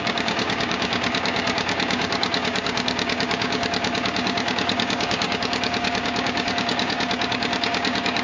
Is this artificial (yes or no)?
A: yes